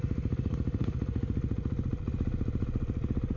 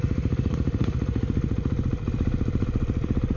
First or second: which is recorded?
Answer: first